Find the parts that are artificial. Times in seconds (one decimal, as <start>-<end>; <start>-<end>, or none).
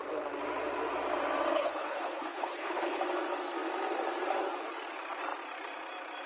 1.5-3.0